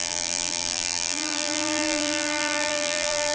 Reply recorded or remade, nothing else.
remade